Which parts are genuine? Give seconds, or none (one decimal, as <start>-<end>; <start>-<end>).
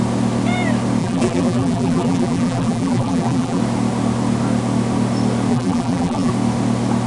0.0-1.0; 3.6-5.5; 6.3-7.1